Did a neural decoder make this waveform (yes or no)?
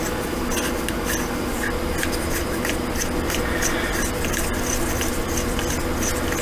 no